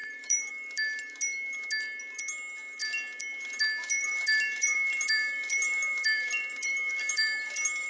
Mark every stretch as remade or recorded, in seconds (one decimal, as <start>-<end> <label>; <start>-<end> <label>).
0.0-0.5 remade; 0.5-4.0 recorded; 4.0-7.9 remade